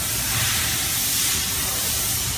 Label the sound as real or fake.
real